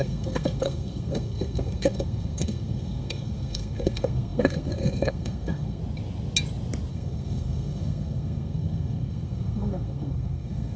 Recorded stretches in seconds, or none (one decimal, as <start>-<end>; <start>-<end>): 5.8-6.9